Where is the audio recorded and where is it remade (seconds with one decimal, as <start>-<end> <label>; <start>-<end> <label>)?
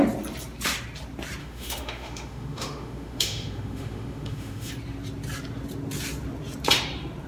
0.0-1.4 recorded; 1.4-4.7 remade; 4.7-7.3 recorded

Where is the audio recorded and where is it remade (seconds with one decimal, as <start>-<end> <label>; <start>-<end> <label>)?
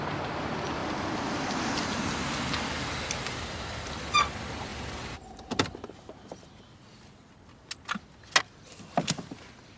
0.0-9.8 recorded